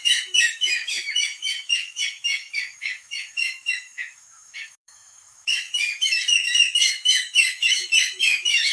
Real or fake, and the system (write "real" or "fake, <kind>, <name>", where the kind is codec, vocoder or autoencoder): fake, autoencoder, DAC-VAE